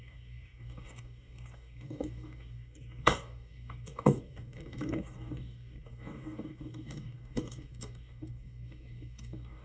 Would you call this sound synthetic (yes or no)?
yes